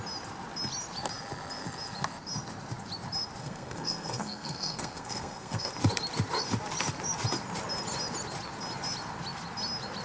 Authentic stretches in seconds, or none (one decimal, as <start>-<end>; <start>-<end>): 0.0-3.4; 5.7-10.0